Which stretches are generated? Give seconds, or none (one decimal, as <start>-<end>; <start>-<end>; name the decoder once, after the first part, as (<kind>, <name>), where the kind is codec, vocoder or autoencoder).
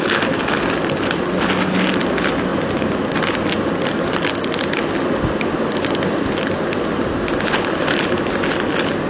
none